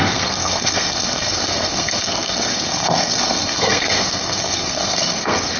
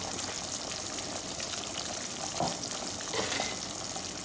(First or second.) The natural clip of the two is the second